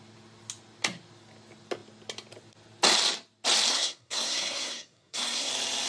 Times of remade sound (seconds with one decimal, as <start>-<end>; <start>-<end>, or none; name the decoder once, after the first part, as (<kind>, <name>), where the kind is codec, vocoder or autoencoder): 3.7-5.5 (codec, SNAC)